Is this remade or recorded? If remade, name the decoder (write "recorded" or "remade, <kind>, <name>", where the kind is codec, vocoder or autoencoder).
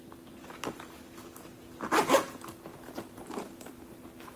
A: recorded